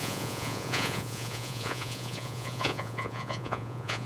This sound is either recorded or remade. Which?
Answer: remade